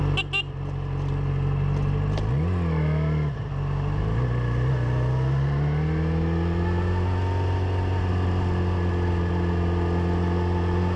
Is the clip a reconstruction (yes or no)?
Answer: no